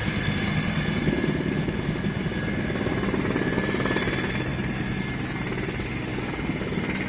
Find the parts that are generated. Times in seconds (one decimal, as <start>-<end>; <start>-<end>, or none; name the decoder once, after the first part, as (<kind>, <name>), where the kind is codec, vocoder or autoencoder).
none